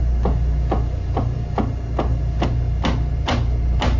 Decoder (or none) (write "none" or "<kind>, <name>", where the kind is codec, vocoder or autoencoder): none